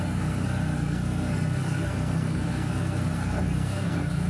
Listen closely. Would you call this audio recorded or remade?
remade